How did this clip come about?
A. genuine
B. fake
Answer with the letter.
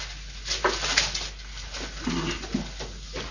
A